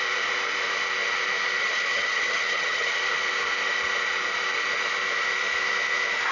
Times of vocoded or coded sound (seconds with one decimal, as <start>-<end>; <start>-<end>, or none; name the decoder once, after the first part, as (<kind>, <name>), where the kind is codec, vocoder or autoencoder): 1.6-3.0 (vocoder, HiFi-GAN)